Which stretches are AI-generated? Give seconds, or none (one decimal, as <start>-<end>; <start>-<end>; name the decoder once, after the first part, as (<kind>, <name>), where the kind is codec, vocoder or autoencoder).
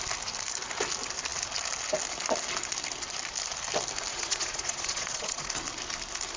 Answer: 4.1-5.5 (vocoder, Vocos)